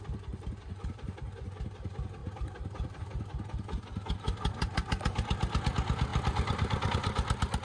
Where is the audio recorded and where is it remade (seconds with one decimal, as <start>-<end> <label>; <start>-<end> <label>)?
0.0-7.6 recorded